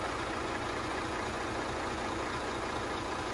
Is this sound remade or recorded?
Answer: remade